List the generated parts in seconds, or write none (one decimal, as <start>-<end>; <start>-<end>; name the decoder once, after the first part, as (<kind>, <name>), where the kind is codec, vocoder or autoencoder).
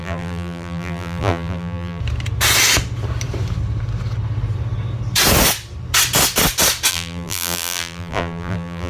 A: 0.0-2.0 (vocoder, BigVGAN v2); 6.9-8.9